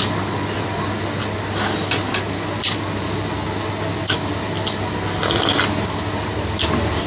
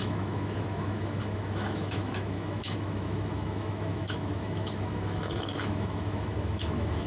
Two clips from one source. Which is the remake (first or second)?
second